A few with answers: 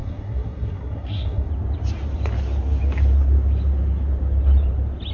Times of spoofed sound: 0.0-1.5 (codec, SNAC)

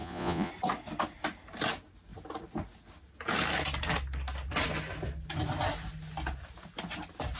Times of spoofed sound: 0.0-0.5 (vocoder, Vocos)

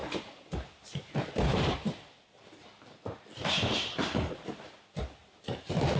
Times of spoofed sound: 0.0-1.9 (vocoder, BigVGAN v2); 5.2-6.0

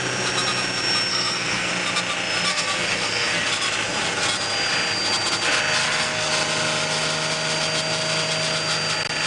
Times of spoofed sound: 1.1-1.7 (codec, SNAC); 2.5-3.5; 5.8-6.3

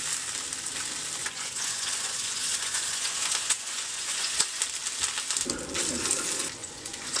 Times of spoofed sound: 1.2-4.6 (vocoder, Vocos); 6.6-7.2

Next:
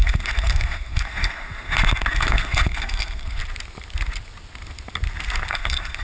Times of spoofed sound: 0.0-3.4 (codec, SNAC); 5.5-6.0

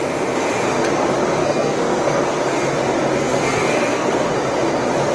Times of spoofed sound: 1.4-2.2 (codec, SNAC); 3.2-4.1

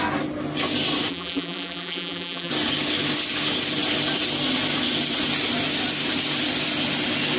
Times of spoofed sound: 1.1-2.5 (vocoder, BigVGAN v2)